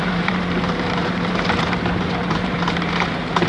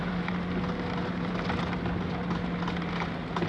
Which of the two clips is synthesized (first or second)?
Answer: first